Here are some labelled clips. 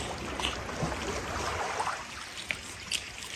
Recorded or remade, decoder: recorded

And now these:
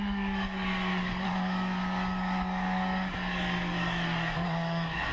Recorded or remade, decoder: remade, codec, DAC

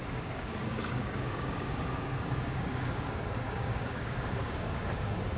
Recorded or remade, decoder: remade, codec, DAC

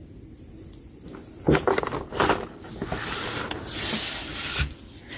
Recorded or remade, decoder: recorded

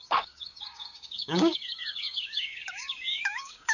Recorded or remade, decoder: remade, codec, DAC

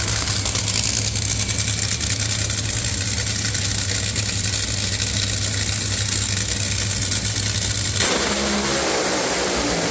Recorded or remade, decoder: recorded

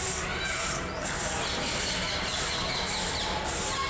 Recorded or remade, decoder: recorded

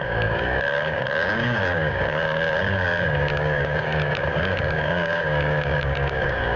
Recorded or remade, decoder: remade, codec, DAC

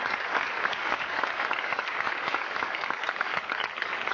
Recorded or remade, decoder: remade, codec, DAC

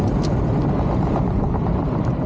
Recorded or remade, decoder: recorded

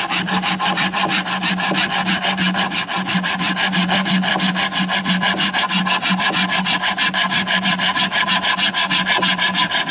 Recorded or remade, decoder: recorded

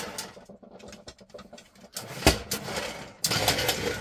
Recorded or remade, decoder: recorded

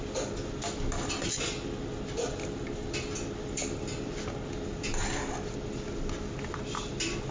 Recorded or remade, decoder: recorded